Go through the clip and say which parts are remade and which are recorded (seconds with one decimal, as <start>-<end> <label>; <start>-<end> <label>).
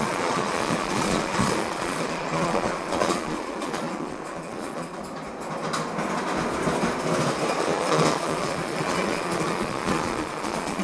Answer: 0.0-5.0 remade; 5.0-7.6 recorded; 7.6-10.8 remade